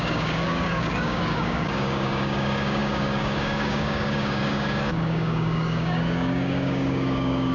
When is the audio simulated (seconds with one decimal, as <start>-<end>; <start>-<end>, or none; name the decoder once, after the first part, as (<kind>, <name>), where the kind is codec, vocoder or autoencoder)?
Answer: 0.0-7.5 (codec, DAC)